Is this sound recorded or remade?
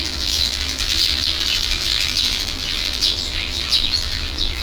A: remade